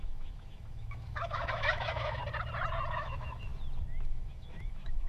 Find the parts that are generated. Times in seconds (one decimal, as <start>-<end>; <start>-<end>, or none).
0.0-2.2; 2.9-3.5; 4.0-5.1